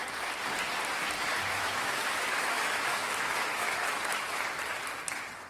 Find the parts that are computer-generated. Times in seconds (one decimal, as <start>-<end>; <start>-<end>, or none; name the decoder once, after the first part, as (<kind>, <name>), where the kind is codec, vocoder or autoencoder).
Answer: 1.4-4.4 (autoencoder, DAC-VAE)